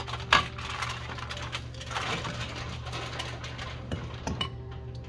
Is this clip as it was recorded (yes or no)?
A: yes